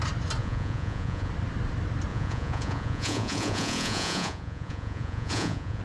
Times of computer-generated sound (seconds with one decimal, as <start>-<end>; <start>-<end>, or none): 0.4-1.3; 2.1-5.8

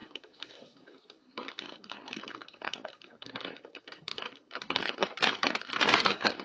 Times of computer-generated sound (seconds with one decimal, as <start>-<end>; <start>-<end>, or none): 0.0-6.4